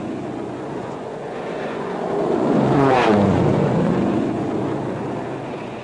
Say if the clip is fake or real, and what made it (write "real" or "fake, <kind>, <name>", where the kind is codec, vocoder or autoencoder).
fake, vocoder, Vocos